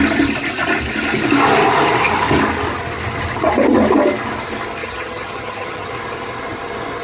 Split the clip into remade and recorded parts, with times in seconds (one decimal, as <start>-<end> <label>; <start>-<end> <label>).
0.0-4.8 recorded; 4.8-5.9 remade; 5.9-7.0 recorded